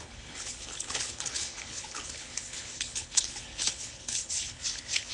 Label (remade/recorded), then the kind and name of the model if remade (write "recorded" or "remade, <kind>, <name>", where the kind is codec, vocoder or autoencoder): remade, codec, HILCodec